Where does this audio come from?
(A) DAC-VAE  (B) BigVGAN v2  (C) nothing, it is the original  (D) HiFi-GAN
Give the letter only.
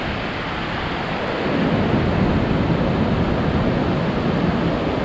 C